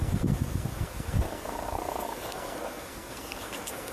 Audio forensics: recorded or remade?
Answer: remade